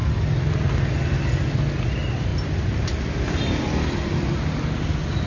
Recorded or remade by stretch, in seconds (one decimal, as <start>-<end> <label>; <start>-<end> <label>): 0.0-5.3 recorded